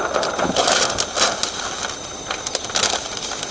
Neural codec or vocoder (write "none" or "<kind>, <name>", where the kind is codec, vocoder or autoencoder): none